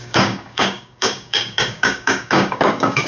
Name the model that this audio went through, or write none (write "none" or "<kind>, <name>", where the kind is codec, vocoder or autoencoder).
codec, DAC